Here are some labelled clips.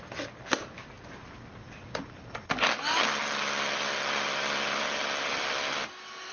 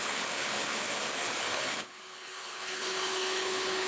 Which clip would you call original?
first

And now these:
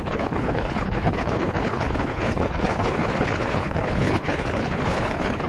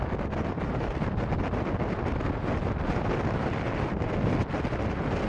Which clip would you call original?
second